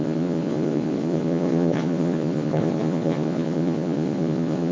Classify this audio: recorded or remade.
remade